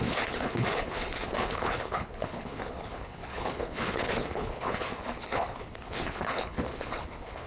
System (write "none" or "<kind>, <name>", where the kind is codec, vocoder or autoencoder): codec, HILCodec